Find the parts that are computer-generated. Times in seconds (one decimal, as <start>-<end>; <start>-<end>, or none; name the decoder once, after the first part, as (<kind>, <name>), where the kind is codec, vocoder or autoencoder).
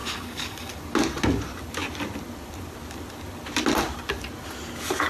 0.0-0.7 (codec, DAC)